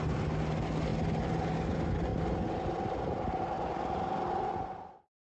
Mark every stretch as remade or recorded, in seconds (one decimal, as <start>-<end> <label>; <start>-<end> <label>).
0.0-5.3 recorded